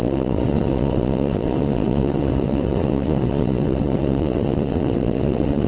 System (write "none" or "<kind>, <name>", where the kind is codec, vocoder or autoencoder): vocoder, WaveNeXt